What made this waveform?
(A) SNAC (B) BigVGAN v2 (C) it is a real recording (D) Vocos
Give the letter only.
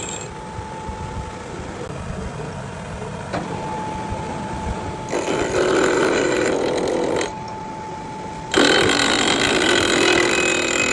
C